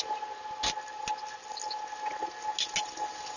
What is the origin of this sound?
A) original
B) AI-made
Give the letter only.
A